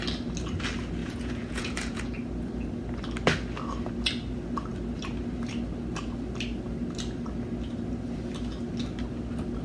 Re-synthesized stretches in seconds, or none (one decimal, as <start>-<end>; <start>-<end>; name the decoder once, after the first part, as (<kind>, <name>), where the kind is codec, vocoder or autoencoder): 1.0-2.0 (vocoder, Vocos)

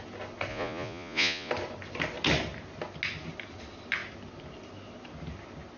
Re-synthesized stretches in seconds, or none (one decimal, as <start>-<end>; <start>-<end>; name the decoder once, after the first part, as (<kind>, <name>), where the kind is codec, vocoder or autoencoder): 0.5-1.5 (vocoder, Vocos)

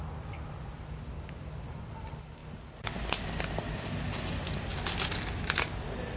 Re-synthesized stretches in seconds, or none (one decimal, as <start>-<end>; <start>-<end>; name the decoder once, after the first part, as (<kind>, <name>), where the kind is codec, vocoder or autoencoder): none

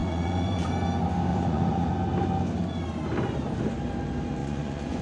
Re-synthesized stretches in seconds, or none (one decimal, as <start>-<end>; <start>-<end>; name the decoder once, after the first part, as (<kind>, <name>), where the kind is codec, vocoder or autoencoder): 0.0-0.7 (vocoder, Vocos); 1.3-1.9; 4.4-5.0